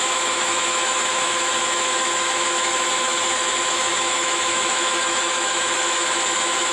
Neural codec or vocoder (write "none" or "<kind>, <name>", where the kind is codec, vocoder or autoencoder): autoencoder, DAC-VAE